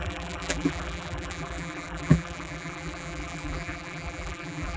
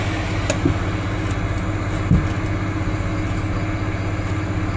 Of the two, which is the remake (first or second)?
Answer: first